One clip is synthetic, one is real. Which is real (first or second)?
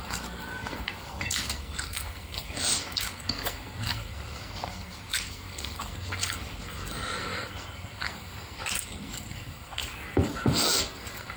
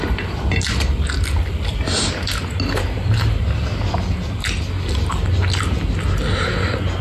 second